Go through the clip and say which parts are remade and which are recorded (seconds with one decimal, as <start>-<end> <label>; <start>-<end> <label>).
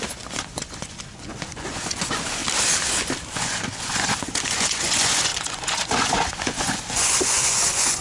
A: 0.0-2.4 remade; 2.4-3.3 recorded; 3.3-8.0 remade